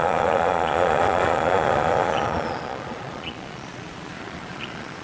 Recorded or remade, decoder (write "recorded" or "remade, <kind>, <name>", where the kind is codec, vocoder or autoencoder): remade, vocoder, Vocos